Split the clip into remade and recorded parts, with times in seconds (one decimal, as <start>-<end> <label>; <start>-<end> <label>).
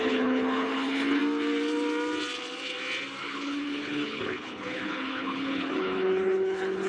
0.0-1.2 remade; 1.2-3.2 recorded; 3.2-6.9 remade